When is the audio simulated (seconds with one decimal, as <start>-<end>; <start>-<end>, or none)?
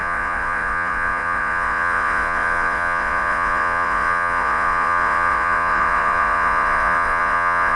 0.0-7.8